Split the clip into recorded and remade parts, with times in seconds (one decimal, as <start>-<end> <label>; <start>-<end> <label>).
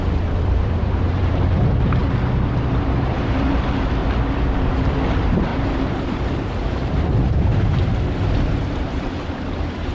0.0-2.0 remade; 2.0-2.6 recorded; 2.6-4.0 remade; 4.0-5.1 recorded; 5.1-7.9 remade; 7.9-8.6 recorded; 8.6-9.9 remade